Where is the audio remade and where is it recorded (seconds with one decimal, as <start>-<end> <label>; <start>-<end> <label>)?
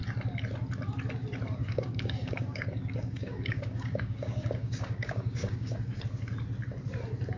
0.0-1.6 recorded; 1.6-6.0 remade; 6.0-7.4 recorded